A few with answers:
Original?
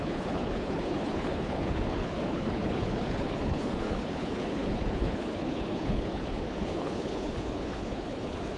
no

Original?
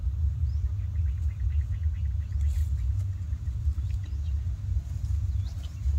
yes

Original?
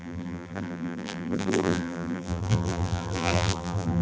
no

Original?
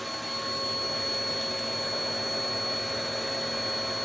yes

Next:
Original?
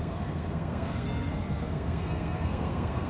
no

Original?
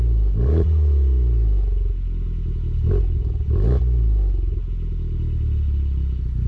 yes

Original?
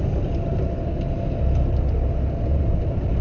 yes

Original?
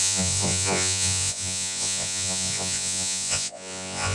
no